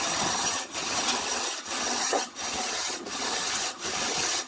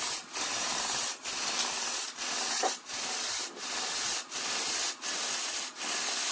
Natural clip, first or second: second